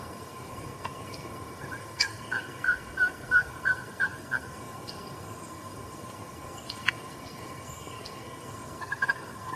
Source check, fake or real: fake